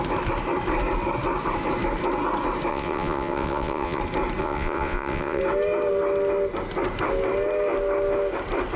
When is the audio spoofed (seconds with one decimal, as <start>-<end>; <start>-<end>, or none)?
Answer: 2.7-4.0; 4.4-5.4